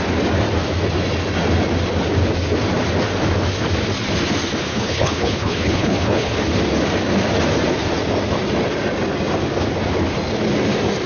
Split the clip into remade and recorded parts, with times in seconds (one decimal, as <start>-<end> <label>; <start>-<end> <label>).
0.0-4.6 recorded; 4.6-6.3 remade; 6.3-11.1 recorded